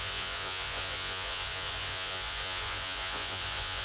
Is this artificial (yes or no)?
yes